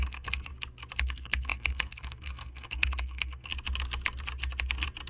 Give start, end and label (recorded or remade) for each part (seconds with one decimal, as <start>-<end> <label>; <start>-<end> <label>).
0.0-0.5 remade; 0.5-1.0 recorded; 1.0-3.5 remade; 3.5-5.1 recorded